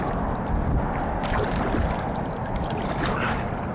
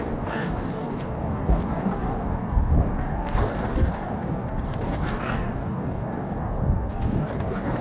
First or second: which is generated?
second